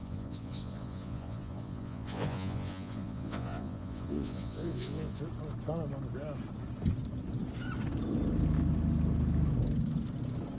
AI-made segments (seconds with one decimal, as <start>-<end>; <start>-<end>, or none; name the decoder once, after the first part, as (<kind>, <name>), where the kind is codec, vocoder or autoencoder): 0.0-5.2 (vocoder, Vocos)